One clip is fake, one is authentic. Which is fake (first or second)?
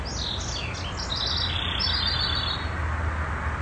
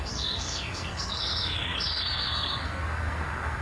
second